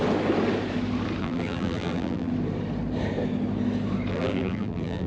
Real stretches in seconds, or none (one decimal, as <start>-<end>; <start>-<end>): 0.0-1.2; 2.3-4.1